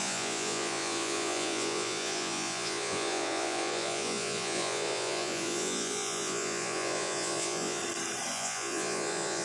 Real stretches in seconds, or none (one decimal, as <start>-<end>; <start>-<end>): 7.8-8.3